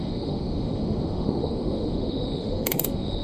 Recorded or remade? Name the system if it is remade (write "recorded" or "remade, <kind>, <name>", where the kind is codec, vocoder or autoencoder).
remade, autoencoder, DAC-VAE